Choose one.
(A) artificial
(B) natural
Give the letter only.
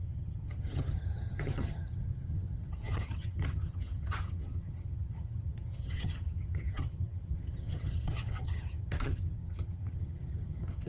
A